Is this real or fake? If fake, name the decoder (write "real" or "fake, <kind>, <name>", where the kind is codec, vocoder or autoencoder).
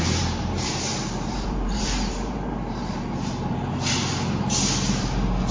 fake, vocoder, BigVGAN v2